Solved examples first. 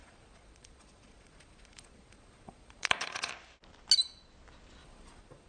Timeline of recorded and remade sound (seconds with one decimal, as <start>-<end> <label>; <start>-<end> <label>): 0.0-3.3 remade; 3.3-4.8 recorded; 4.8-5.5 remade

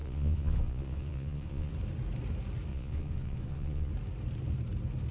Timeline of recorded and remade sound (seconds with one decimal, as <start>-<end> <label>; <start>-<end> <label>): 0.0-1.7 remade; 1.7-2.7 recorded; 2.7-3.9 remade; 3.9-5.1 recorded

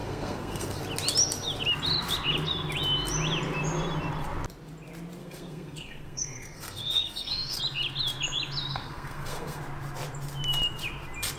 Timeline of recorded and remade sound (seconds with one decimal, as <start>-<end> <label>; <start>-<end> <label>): 0.0-0.8 remade; 0.8-5.2 recorded; 5.2-7.6 remade; 7.6-8.7 recorded; 8.7-9.6 remade; 9.6-11.4 recorded

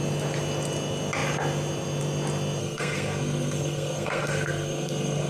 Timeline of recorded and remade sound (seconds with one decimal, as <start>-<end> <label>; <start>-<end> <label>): 0.0-2.6 recorded; 2.6-5.3 remade

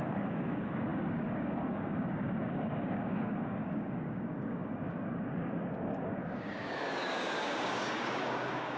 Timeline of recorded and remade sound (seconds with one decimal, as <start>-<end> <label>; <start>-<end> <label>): 0.0-8.8 remade

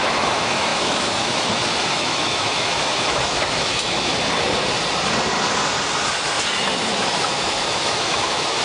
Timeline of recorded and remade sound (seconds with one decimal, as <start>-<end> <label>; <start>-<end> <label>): 0.0-4.1 remade; 4.1-6.6 recorded; 6.6-8.6 remade